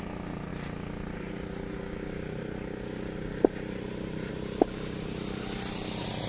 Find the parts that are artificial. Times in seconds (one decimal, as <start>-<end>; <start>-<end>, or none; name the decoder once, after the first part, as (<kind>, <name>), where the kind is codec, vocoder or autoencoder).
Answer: none